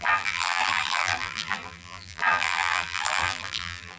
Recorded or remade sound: remade